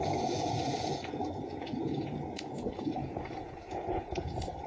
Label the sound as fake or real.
fake